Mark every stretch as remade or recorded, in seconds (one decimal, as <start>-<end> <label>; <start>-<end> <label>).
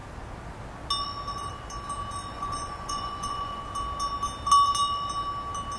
0.0-2.3 recorded; 2.3-3.6 remade; 3.6-5.8 recorded